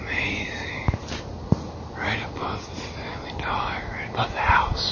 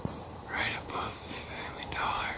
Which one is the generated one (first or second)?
second